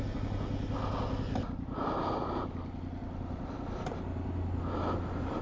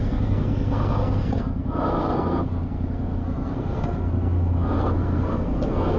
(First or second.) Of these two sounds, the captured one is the first